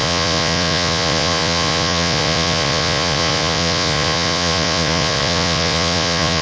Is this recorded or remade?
remade